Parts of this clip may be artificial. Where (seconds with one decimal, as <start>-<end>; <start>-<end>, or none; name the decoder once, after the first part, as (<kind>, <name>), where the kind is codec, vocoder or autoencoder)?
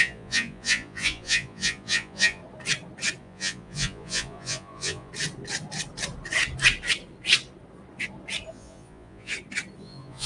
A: 0.0-2.4 (vocoder, Vocos); 3.2-5.1; 8.5-9.3; 9.8-10.3